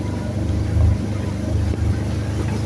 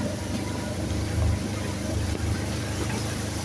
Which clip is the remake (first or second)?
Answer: second